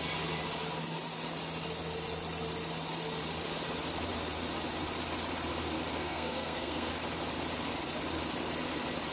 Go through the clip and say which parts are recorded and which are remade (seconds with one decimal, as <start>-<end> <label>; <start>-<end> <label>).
0.0-6.0 recorded; 6.0-6.9 remade; 6.9-9.1 recorded